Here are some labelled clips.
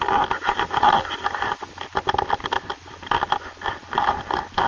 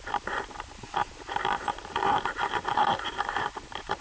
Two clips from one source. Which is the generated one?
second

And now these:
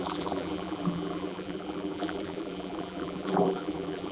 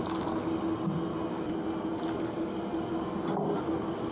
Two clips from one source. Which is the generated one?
first